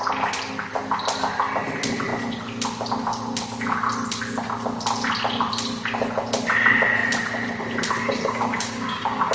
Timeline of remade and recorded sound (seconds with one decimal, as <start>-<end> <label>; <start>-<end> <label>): 0.0-8.0 recorded; 8.0-9.3 remade